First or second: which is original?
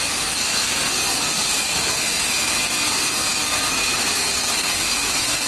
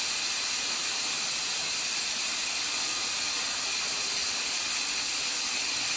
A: second